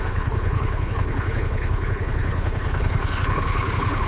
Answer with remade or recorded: remade